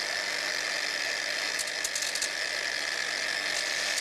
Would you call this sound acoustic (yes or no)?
yes